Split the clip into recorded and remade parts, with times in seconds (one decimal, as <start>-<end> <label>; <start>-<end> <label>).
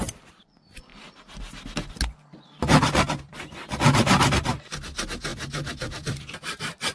0.0-5.3 recorded; 5.3-6.3 remade; 6.3-6.9 recorded